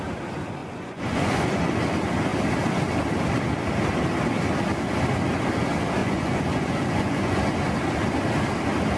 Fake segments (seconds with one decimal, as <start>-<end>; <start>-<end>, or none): 0.6-1.8; 6.0-7.4